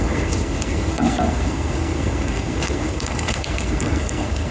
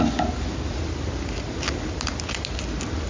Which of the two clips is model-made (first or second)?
first